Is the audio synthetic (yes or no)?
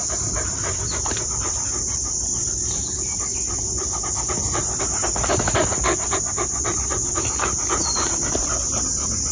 no